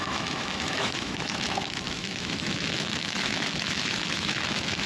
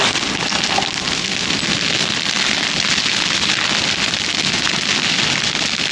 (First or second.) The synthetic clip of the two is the first